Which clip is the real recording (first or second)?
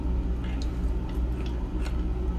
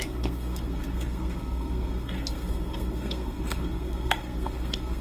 first